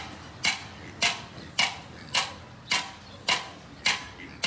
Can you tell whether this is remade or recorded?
recorded